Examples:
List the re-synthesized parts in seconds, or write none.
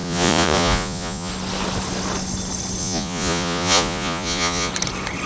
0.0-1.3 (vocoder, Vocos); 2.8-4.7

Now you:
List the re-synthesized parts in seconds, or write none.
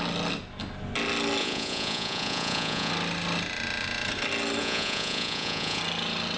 1.4-2.9 (vocoder, Vocos); 4.6-5.8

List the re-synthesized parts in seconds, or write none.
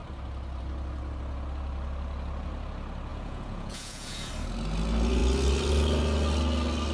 3.1-4.3 (vocoder, Vocos)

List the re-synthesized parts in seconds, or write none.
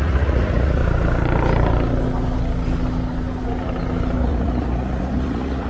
0.0-0.8 (vocoder, Vocos); 4.2-5.7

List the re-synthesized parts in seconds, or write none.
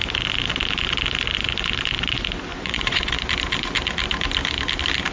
2.5-3.2 (vocoder, Vocos)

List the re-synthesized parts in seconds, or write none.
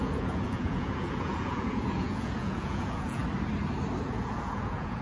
0.0-3.2 (vocoder, Vocos); 4.0-5.0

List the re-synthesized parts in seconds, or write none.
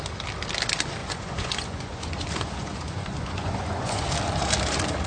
1.0-4.1 (vocoder, Vocos)